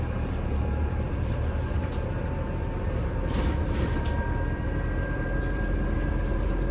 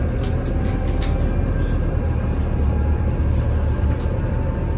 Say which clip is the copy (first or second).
first